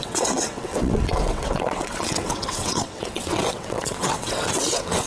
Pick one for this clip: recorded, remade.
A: remade